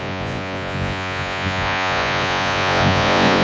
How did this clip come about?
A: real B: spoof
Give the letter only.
B